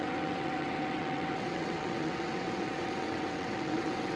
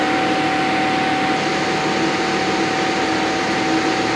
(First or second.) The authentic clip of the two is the second